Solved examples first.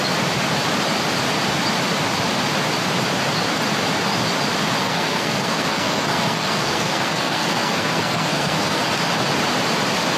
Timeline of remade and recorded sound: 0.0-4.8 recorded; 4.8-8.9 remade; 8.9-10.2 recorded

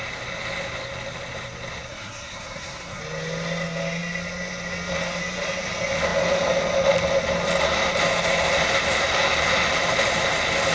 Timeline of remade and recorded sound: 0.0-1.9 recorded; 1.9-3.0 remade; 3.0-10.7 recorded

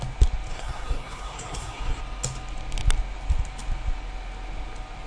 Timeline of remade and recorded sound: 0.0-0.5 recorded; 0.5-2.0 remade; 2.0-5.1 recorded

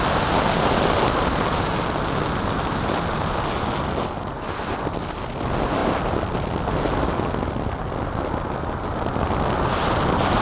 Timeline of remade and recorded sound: 0.0-10.4 recorded

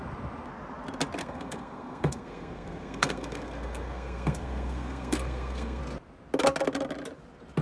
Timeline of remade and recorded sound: 0.0-1.2 recorded; 1.2-5.8 remade; 5.8-7.6 recorded

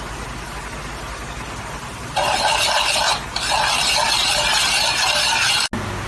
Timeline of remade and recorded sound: 0.0-6.1 recorded